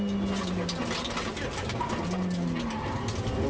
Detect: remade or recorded recorded